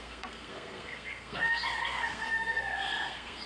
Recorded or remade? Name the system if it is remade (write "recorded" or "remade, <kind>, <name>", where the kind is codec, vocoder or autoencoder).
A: remade, codec, SNAC